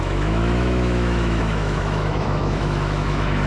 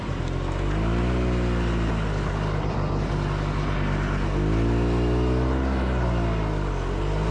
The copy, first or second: first